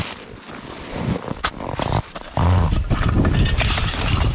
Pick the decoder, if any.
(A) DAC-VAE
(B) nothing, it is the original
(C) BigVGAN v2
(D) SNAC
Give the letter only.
C